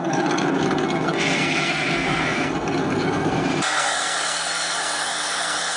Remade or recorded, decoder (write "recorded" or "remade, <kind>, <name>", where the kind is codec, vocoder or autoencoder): remade, codec, SNAC